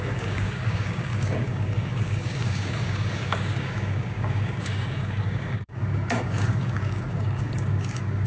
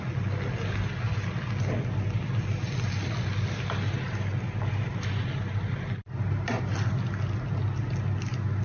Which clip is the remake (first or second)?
first